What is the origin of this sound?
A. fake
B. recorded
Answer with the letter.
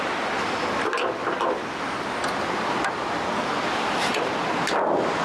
B